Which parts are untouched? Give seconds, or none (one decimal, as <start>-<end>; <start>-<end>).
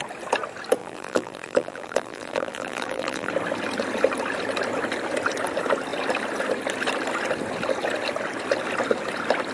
0.0-0.8; 3.3-9.5